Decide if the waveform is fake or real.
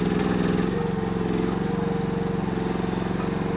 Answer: real